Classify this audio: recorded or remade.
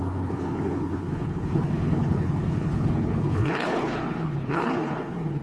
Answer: remade